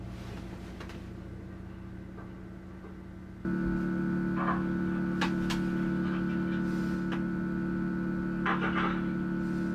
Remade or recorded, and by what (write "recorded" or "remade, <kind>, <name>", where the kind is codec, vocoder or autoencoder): recorded